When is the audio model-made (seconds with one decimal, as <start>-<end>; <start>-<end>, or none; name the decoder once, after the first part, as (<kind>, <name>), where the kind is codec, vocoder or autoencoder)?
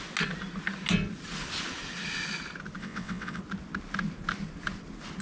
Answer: 2.8-3.4 (vocoder, WaveNeXt)